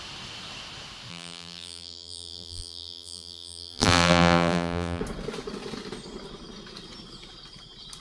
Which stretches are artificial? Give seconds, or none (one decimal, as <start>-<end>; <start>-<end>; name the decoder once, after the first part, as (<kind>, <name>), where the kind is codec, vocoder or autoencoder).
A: 1.1-5.0 (vocoder, BigVGAN v2)